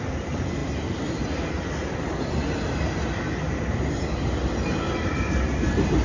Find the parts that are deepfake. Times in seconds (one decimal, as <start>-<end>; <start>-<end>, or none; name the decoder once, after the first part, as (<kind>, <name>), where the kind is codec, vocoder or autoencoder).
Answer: 0.6-1.2 (vocoder, BigVGAN v2)

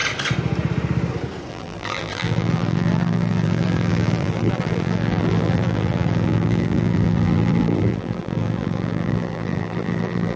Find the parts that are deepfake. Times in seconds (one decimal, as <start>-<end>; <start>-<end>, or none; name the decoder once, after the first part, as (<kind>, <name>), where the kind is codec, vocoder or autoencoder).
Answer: 1.5-10.4 (vocoder, BigVGAN v2)

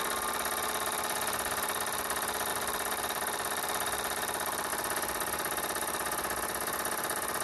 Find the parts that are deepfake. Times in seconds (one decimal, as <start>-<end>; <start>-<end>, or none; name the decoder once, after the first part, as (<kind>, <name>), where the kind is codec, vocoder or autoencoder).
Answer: 2.5-4.7 (vocoder, BigVGAN v2)

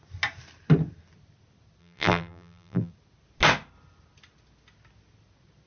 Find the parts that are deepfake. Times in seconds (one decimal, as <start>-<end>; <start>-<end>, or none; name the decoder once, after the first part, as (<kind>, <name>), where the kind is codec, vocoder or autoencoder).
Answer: 1.8-2.9 (vocoder, BigVGAN v2)

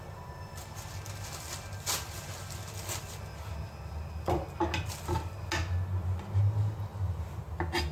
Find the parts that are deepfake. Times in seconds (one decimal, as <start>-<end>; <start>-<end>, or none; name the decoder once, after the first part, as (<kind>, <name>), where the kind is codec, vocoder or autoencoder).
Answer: none

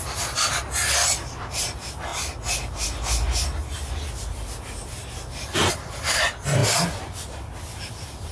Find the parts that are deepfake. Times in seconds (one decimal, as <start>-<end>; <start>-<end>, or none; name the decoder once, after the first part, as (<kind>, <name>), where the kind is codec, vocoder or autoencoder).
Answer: 0.0-2.1 (vocoder, BigVGAN v2); 5.7-6.6; 7.8-8.3